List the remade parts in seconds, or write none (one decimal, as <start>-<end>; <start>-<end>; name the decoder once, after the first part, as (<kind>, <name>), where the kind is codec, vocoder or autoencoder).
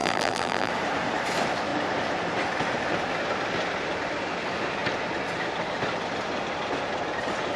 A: 0.0-0.7 (vocoder, BigVGAN v2)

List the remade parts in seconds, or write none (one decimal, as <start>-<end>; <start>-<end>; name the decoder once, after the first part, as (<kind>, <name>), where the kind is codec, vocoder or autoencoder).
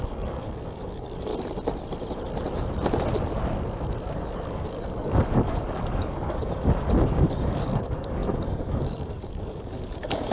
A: 0.0-1.3 (codec, DAC); 4.0-10.3